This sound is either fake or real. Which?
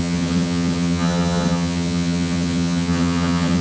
fake